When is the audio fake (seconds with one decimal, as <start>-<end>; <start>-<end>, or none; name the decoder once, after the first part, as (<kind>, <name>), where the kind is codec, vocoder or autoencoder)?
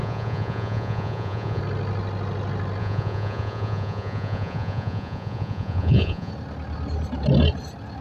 0.0-1.6 (vocoder, Vocos); 2.8-6.3